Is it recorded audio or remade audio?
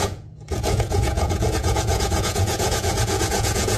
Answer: remade